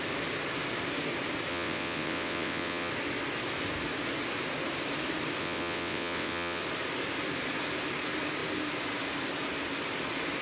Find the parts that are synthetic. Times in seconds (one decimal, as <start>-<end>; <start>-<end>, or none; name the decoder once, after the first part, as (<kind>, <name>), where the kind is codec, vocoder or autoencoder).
1.5-2.9 (vocoder, WaveNeXt); 5.4-6.6

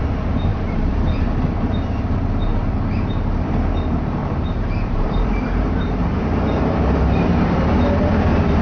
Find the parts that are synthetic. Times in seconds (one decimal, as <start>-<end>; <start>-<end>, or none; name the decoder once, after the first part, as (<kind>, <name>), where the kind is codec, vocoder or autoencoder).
0.5-1.3 (vocoder, BigVGAN v2); 2.5-3.2; 4.2-8.6